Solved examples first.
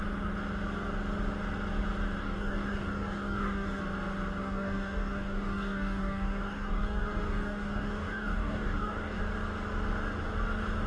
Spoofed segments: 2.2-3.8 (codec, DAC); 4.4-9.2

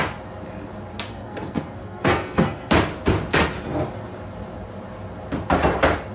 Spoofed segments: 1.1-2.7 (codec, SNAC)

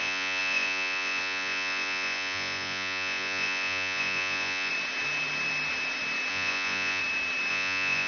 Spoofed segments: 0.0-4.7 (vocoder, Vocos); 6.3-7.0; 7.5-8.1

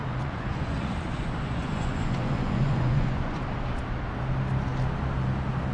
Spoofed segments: 0.0-3.4 (vocoder, Vocos)

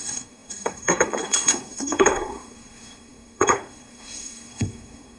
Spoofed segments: 0.0-5.2 (codec, SNAC)

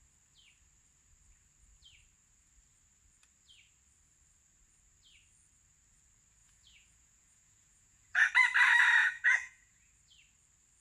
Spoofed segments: 6.4-8.3 (vocoder, Vocos); 9.0-9.9

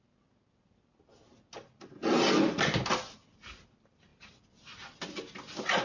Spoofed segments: none

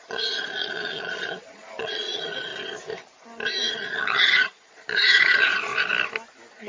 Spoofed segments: 0.0-2.5 (vocoder, Vocos); 3.7-5.7